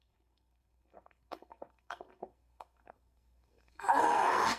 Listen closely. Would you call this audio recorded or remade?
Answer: remade